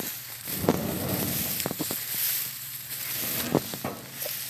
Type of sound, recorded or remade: recorded